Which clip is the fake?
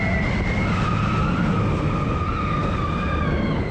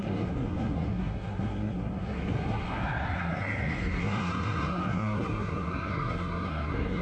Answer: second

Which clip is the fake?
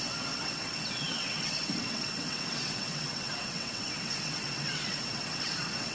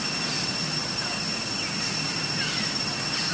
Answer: first